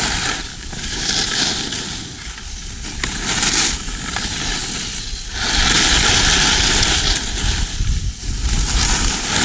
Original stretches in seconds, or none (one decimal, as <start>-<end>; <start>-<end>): 0.0-0.5; 1.0-9.4

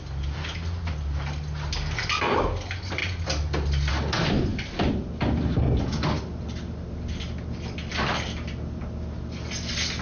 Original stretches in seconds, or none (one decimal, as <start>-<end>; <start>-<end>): 0.0-10.0

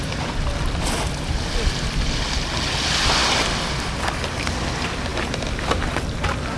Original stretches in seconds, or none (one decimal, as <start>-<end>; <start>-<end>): 0.0-6.6

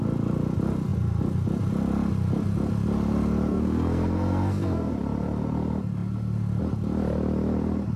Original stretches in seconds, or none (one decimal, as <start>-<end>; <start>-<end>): 0.0-3.5; 4.9-8.0

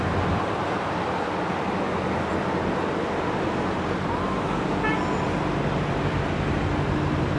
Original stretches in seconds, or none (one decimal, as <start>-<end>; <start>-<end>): 0.0-7.4

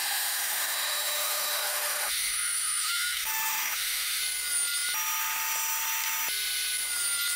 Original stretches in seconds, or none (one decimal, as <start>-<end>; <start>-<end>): 4.2-7.4

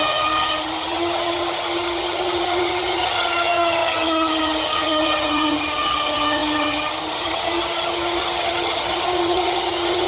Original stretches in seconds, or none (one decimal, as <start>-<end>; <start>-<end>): none

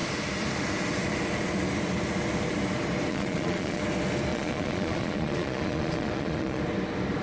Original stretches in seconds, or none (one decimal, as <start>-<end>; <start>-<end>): 0.0-3.1; 3.8-4.3; 6.6-7.2